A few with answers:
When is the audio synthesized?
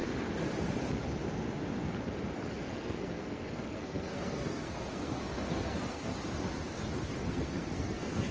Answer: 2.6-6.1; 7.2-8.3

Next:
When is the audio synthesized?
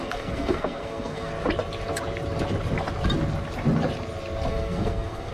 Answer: 0.0-1.3; 4.5-5.3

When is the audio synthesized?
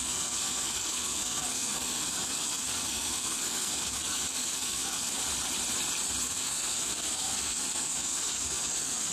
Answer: 0.0-5.2; 6.2-9.1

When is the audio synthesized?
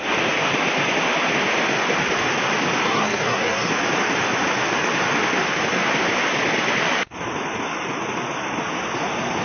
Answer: 2.8-3.7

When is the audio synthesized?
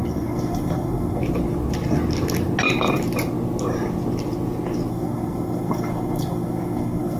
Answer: 0.0-1.2; 4.9-7.2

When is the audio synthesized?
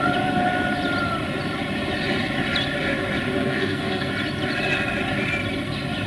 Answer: 3.4-4.1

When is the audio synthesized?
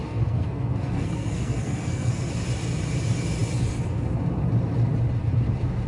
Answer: 0.0-2.1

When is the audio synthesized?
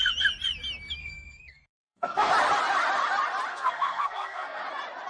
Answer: 1.0-2.3; 3.5-4.6